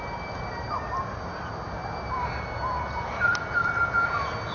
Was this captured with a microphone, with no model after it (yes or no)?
yes